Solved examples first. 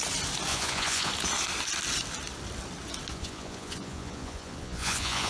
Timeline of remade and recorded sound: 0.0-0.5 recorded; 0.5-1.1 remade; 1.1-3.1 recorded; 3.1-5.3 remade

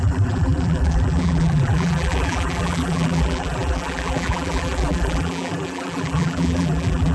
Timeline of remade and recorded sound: 0.0-7.1 remade

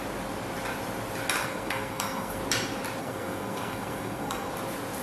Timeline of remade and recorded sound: 0.0-1.4 recorded; 1.4-2.4 remade; 2.4-3.0 recorded; 3.0-4.5 remade; 4.5-5.0 recorded